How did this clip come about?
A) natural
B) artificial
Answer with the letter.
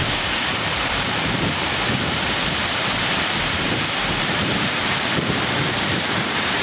B